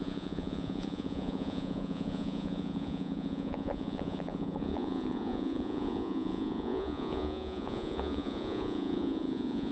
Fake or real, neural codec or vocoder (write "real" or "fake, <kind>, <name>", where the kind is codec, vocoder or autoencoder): fake, vocoder, Vocos